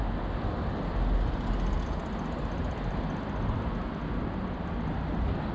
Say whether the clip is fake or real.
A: real